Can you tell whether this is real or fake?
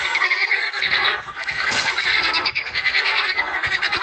fake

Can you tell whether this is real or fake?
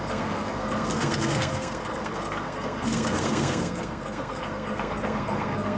fake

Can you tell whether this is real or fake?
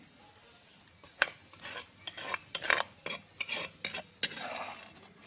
real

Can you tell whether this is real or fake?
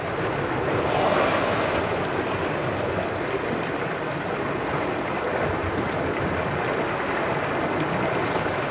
real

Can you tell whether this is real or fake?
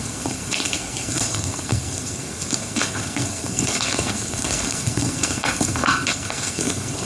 fake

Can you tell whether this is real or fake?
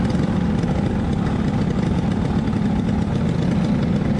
real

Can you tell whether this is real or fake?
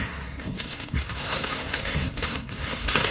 fake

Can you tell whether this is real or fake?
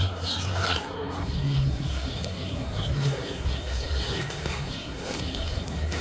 fake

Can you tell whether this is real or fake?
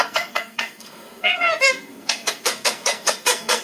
fake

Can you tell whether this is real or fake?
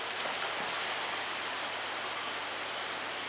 real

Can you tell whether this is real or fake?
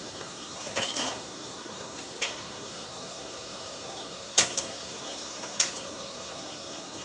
fake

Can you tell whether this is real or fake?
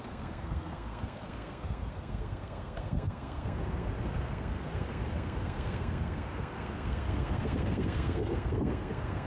fake